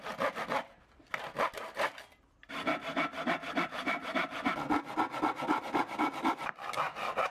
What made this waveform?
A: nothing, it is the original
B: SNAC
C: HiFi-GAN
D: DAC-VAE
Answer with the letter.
A